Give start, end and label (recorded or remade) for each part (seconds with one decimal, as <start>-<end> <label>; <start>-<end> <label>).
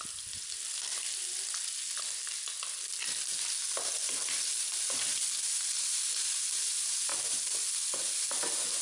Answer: 0.0-8.8 recorded